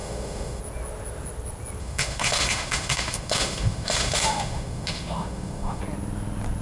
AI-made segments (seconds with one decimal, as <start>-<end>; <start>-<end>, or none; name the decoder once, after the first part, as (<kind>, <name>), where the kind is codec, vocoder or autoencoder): 0.0-0.6 (autoencoder, DAC-VAE); 1.8-5.8